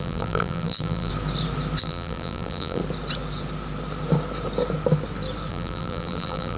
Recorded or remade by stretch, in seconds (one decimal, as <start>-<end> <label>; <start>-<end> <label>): 0.0-1.1 remade; 1.1-1.8 recorded; 1.8-2.8 remade; 2.8-5.5 recorded; 5.5-6.6 remade